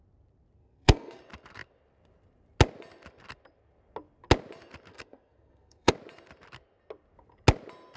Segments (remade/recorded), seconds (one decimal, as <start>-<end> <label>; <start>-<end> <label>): 0.0-0.6 recorded; 0.6-1.2 remade; 1.2-4.9 recorded; 4.9-5.9 remade; 5.9-8.0 recorded